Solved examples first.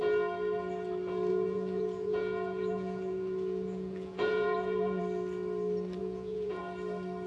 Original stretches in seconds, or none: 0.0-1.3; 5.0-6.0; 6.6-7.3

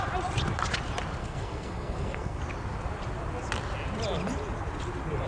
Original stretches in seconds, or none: 0.0-1.2; 2.4-5.3

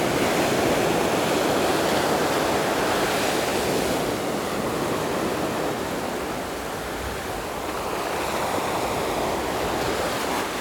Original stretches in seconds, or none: 0.0-10.6

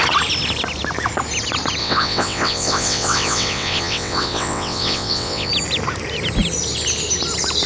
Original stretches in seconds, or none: 0.0-1.8; 5.5-7.7

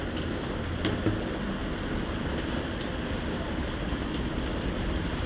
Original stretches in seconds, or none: 0.0-5.3

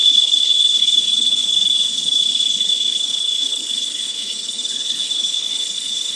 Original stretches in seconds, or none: none

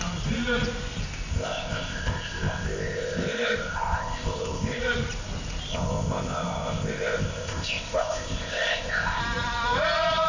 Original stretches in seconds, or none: 0.0-1.3; 4.8-5.7; 9.2-10.3

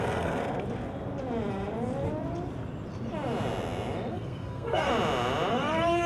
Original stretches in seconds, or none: 0.4-4.1; 4.9-5.5